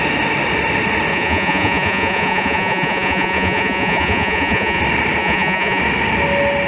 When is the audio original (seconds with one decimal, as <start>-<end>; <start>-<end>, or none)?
0.0-1.1; 4.8-5.2; 5.8-6.7